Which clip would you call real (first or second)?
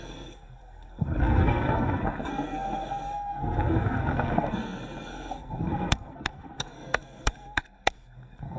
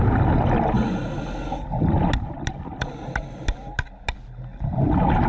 second